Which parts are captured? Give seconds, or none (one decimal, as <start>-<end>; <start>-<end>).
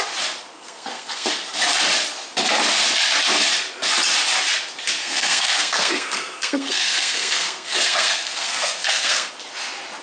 0.0-0.5; 1.3-5.0; 9.3-10.0